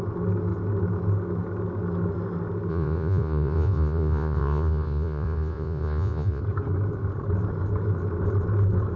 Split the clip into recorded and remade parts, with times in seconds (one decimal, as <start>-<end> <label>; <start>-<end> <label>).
0.0-2.7 recorded; 2.7-6.4 remade; 6.4-9.0 recorded